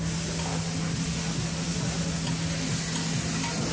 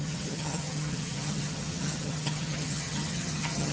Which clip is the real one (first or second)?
first